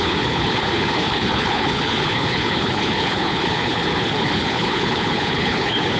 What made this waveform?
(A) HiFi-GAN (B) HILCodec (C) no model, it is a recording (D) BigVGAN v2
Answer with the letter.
B